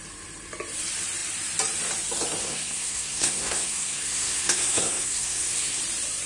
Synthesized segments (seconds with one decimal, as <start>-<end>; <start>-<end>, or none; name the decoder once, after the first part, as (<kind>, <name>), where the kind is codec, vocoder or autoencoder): 2.4-5.8 (codec, SNAC)